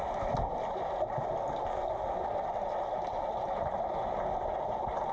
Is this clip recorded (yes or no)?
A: yes